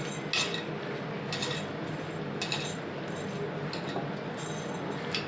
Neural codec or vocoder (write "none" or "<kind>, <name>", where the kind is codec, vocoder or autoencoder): none